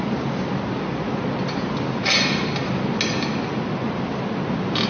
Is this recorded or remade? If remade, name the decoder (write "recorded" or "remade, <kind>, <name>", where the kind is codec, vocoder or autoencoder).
recorded